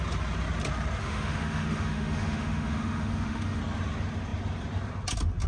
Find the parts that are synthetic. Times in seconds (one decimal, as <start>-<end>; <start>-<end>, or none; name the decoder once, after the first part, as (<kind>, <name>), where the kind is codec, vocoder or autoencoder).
1.0-3.6 (autoencoder, DAC-VAE)